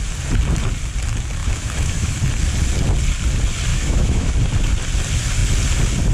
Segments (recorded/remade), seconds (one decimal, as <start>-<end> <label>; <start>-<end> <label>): 0.0-1.4 recorded; 1.4-2.2 remade; 2.2-3.7 recorded; 3.7-4.3 remade; 4.3-6.1 recorded